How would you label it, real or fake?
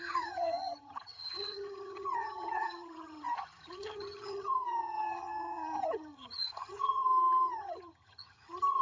fake